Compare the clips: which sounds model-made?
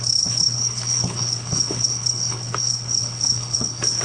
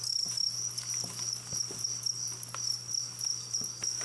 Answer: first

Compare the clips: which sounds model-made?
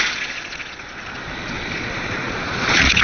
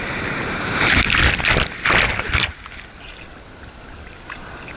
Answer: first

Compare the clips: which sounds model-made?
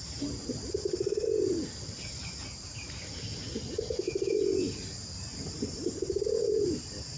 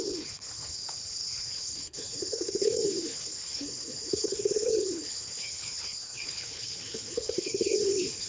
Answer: second